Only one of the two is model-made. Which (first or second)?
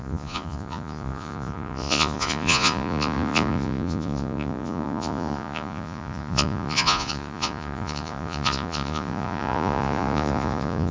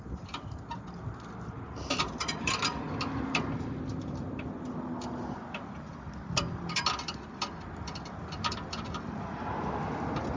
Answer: first